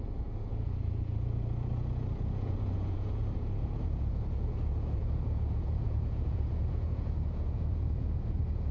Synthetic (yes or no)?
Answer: yes